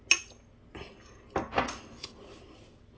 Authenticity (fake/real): real